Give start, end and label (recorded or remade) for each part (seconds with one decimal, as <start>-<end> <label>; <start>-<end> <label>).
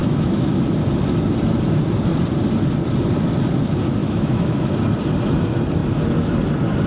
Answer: 0.0-0.6 remade; 0.6-4.0 recorded; 4.0-4.7 remade; 4.7-6.9 recorded